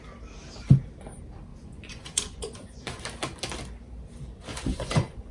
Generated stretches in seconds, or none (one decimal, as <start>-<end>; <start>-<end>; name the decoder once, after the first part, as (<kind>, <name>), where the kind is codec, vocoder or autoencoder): 1.5-3.0 (vocoder, Vocos); 4.5-5.3